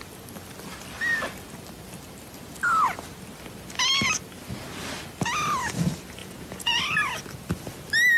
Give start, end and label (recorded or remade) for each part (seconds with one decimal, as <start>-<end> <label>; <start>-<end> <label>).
0.0-6.2 recorded; 6.2-6.8 remade; 6.8-8.2 recorded